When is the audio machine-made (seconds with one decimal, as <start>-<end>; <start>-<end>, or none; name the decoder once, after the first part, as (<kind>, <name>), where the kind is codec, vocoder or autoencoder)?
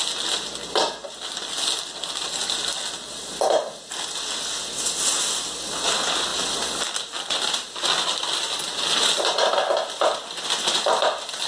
none